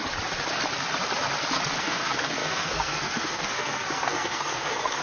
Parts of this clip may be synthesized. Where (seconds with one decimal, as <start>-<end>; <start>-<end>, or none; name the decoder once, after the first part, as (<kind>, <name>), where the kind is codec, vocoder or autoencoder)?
1.8-5.0 (codec, SNAC)